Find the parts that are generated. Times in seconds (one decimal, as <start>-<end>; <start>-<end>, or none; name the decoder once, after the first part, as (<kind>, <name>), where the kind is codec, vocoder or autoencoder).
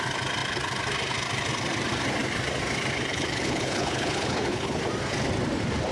3.1-4.8 (codec, HILCodec)